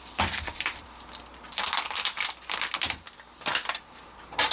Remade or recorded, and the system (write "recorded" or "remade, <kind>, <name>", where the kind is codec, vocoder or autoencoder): recorded